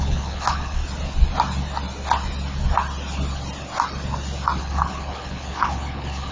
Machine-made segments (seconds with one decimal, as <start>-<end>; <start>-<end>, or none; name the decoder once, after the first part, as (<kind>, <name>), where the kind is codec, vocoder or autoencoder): 0.0-0.8 (codec, HILCodec); 4.6-6.3